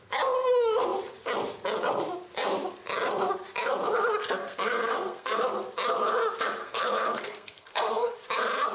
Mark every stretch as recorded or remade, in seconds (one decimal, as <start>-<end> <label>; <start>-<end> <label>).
0.0-4.4 recorded; 4.4-5.4 remade; 5.4-6.6 recorded; 6.6-8.1 remade; 8.1-8.7 recorded